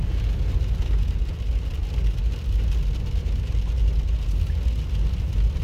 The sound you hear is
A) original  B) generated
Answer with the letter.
A